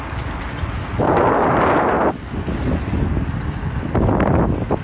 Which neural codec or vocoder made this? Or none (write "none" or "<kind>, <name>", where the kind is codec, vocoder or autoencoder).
none